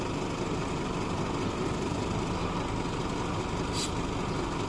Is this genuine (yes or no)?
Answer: yes